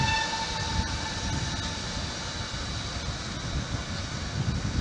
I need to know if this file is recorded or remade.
recorded